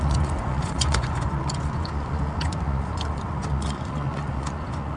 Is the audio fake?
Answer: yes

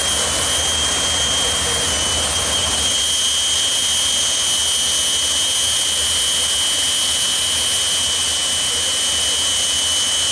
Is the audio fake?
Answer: no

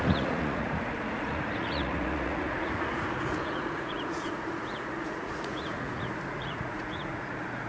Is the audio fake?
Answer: yes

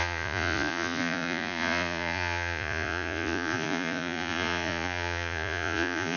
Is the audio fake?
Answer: yes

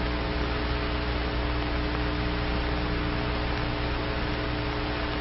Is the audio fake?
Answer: no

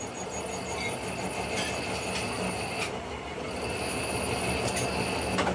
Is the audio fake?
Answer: no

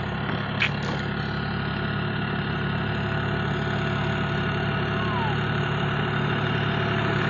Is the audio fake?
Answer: no